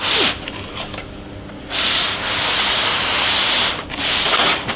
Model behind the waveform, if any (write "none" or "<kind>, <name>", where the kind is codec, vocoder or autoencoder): none